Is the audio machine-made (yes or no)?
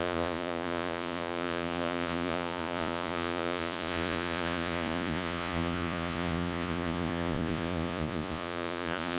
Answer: yes